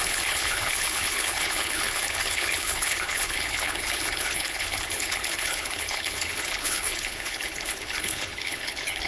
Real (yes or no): no